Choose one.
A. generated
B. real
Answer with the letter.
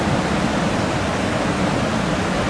B